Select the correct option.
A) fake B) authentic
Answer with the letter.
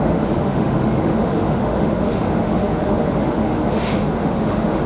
A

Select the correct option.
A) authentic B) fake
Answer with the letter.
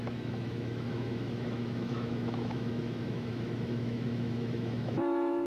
B